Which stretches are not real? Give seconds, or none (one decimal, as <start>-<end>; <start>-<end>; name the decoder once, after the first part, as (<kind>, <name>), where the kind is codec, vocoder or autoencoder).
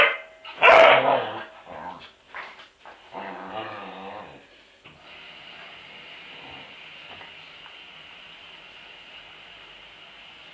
none